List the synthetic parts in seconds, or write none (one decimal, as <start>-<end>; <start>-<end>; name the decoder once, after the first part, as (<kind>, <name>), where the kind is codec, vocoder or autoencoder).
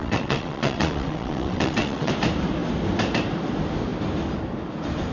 0.0-2.1 (vocoder, WaveNeXt)